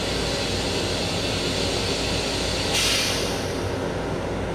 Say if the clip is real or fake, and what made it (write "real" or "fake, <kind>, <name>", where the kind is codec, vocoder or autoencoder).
real